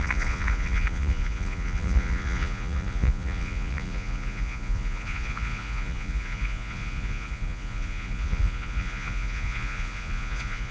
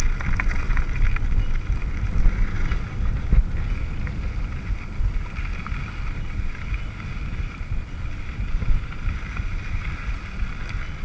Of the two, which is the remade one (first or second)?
first